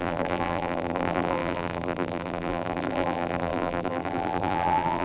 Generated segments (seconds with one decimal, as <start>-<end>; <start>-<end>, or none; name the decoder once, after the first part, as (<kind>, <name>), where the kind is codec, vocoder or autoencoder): 0.0-5.0 (vocoder, BigVGAN v2)